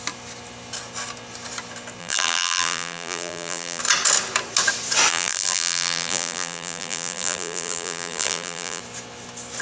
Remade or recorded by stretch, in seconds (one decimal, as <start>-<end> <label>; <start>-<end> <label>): 0.0-2.0 recorded; 2.0-3.8 remade; 3.8-5.1 recorded; 5.1-8.8 remade; 8.8-9.6 recorded